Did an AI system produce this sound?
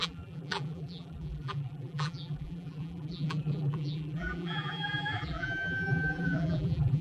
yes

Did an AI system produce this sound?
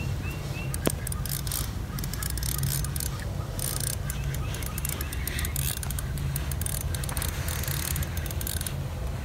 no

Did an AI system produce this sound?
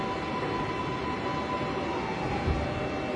no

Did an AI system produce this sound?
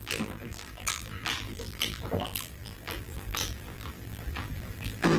yes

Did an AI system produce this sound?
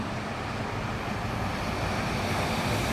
yes